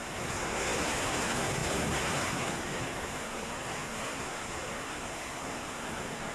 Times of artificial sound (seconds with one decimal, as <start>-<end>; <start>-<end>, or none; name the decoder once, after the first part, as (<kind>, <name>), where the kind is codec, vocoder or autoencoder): 0.0-6.3 (codec, SNAC)